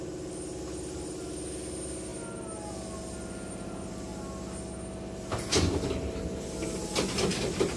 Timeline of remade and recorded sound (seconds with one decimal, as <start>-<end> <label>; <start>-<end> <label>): 0.0-7.8 recorded